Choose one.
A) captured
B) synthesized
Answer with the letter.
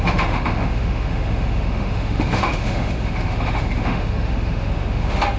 B